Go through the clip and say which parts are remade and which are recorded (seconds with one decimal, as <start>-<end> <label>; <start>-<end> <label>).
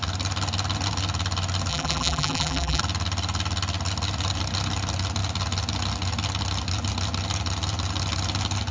0.0-1.7 recorded; 1.7-2.8 remade; 2.8-8.7 recorded